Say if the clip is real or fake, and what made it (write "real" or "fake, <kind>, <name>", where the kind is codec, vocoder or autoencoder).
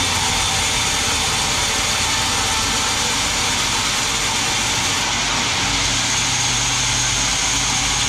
real